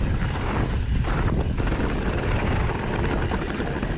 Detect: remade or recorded remade